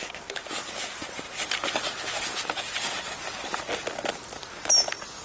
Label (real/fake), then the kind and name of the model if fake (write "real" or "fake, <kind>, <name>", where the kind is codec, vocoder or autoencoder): real